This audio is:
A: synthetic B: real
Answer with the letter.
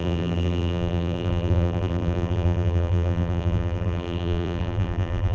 A